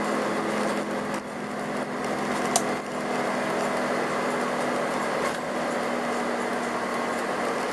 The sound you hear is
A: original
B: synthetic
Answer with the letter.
A